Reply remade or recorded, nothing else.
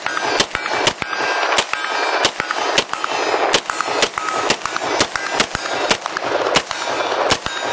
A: recorded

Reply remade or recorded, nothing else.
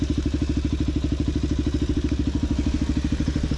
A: recorded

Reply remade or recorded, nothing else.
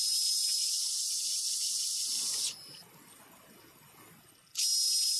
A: recorded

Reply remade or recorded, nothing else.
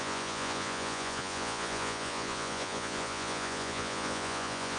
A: remade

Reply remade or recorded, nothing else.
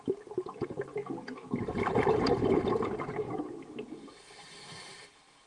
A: recorded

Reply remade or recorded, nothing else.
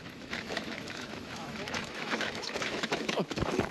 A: remade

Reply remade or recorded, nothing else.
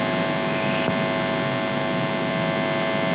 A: recorded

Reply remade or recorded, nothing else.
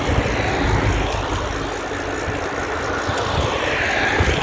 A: recorded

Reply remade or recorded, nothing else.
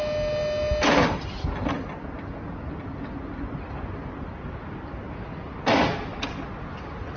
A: recorded